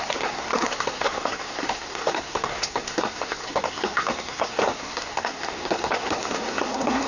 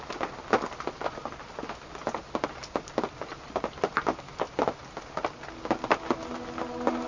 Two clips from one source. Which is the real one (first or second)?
second